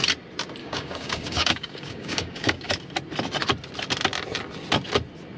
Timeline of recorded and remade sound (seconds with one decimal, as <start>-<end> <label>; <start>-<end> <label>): 0.0-0.6 recorded; 0.6-2.7 remade; 2.7-5.4 recorded